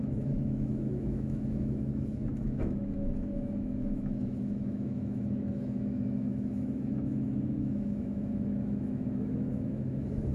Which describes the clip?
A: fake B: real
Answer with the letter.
A